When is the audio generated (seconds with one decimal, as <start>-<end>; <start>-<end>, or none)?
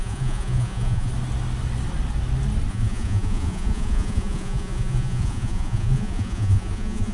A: 0.0-1.1; 2.7-7.1